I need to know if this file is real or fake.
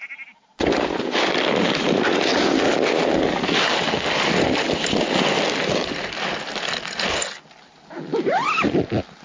real